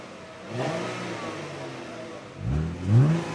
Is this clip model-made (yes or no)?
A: no